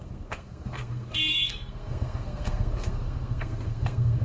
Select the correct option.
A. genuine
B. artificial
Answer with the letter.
B